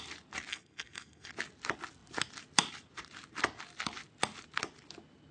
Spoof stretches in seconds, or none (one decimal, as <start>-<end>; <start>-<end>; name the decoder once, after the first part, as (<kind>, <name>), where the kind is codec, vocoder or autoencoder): 0.5-1.3 (codec, SNAC)